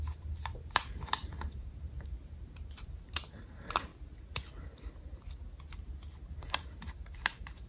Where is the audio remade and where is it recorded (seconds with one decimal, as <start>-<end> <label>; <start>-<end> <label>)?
0.0-3.9 remade; 3.9-6.4 recorded; 6.4-7.7 remade